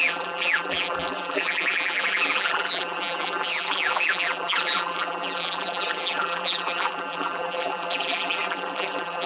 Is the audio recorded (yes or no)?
no